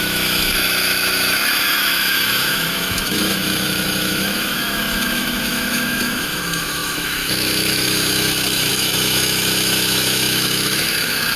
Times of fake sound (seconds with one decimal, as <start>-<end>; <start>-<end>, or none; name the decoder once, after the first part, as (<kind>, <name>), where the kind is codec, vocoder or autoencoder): 0.0-11.4 (autoencoder, DAC-VAE)